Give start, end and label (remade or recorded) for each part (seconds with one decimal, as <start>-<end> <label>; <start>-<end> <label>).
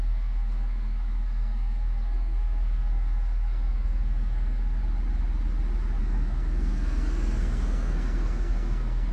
0.0-4.8 remade; 4.8-6.0 recorded; 6.0-9.1 remade